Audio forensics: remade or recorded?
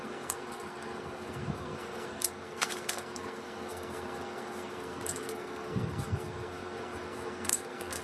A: remade